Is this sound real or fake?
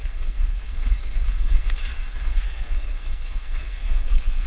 fake